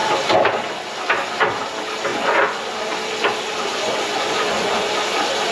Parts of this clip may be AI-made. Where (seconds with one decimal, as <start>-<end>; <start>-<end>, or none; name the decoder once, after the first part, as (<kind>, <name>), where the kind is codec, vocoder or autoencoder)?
2.1-2.7 (vocoder, Vocos); 3.7-4.9